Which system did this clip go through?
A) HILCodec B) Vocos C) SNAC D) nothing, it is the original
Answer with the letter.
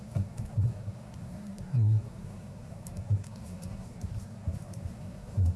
C